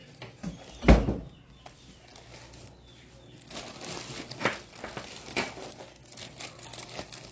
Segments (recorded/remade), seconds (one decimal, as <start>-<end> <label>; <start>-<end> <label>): 0.0-7.3 recorded